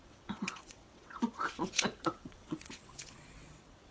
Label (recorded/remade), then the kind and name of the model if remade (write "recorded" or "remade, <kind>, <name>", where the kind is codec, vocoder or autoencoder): remade, vocoder, WaveNeXt